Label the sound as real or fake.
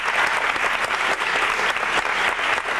real